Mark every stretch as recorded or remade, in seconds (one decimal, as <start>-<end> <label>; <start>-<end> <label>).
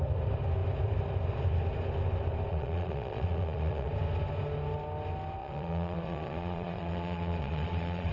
0.0-2.5 recorded; 2.5-3.9 remade; 3.9-5.4 recorded; 5.4-8.1 remade